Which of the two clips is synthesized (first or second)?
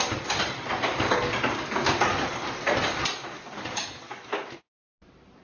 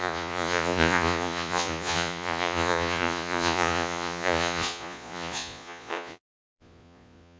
second